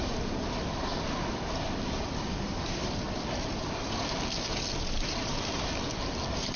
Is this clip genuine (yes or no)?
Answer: yes